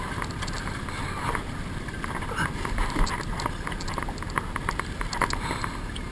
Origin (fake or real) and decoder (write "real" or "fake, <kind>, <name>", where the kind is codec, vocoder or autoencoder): real